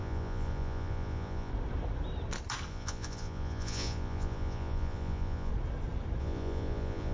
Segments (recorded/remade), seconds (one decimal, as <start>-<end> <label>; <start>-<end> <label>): 0.0-1.5 remade; 1.5-2.7 recorded; 2.7-5.5 remade; 5.5-6.2 recorded; 6.2-7.1 remade